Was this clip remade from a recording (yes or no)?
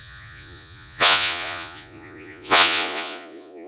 yes